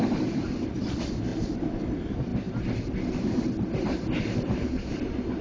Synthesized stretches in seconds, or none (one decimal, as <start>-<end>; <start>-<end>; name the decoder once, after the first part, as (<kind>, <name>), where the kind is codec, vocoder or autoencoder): 0.0-1.3 (vocoder, BigVGAN v2); 1.8-2.3; 4.2-5.4

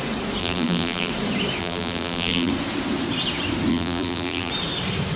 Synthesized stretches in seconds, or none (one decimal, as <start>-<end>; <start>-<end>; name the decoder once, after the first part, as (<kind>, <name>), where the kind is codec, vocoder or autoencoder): 0.4-1.1 (vocoder, BigVGAN v2); 1.6-2.5; 3.7-4.5

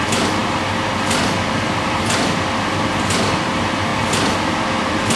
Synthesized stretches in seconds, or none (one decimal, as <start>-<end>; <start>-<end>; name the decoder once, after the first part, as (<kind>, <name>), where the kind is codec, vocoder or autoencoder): none

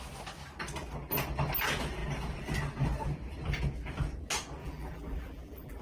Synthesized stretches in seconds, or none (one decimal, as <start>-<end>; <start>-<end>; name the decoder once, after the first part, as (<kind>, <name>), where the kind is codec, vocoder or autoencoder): 4.6-5.8 (vocoder, BigVGAN v2)

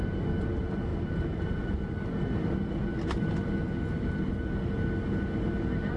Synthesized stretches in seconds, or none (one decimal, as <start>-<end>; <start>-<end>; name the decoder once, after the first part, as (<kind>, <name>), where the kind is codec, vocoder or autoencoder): 0.9-1.8 (vocoder, BigVGAN v2)

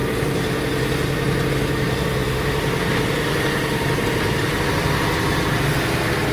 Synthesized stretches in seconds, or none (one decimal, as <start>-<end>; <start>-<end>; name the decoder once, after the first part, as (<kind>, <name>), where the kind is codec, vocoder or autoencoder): none